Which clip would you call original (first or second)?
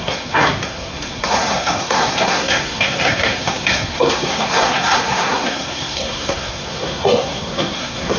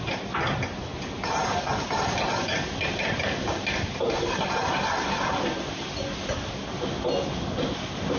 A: second